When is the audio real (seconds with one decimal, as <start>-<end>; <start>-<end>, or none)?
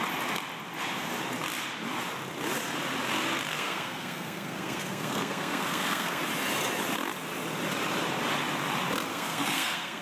0.0-3.5; 6.2-9.1